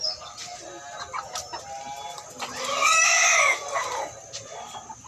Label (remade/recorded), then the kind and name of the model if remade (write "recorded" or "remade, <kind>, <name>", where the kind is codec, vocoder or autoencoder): recorded